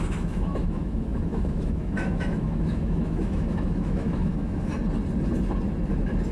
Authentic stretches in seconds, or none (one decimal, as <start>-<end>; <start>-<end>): 4.7-6.3